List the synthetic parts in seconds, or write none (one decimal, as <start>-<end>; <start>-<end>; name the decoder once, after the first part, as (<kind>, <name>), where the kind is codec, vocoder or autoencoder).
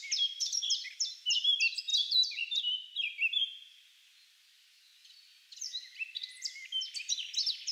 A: 1.9-2.6 (vocoder, BigVGAN v2)